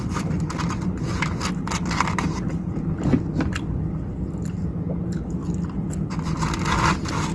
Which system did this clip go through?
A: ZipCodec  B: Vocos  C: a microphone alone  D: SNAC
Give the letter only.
C